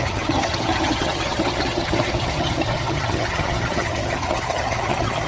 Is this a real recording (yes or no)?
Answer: no